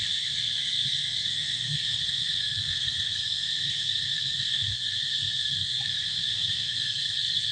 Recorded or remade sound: remade